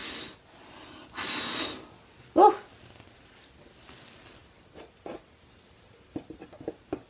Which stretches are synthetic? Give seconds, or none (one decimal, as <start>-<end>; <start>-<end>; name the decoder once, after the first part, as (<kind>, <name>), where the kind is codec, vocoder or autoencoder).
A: none